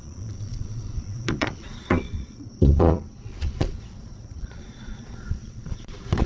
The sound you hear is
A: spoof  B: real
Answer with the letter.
A